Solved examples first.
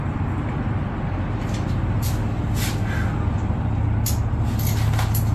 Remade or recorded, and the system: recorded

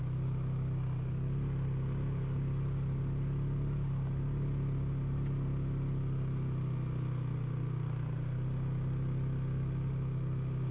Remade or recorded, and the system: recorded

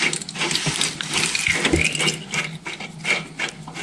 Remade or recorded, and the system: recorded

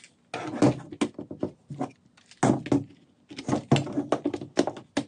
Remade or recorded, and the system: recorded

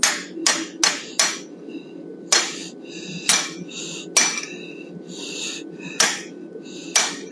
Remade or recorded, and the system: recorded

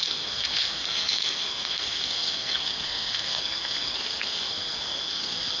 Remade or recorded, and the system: remade, codec, SNAC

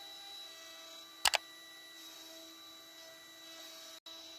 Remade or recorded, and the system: recorded